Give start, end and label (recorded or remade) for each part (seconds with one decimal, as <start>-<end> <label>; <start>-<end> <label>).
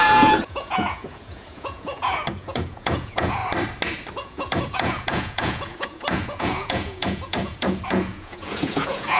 0.0-3.4 remade; 3.4-4.1 recorded; 4.1-9.2 remade